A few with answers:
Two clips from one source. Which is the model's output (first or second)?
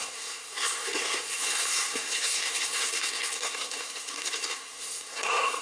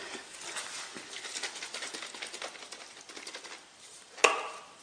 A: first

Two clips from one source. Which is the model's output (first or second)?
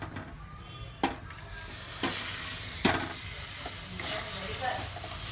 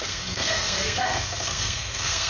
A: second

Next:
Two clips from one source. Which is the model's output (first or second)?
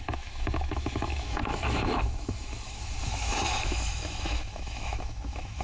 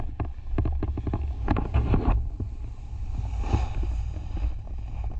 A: first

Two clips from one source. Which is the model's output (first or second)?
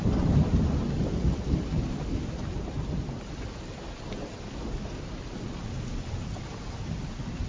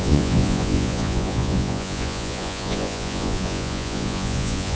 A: second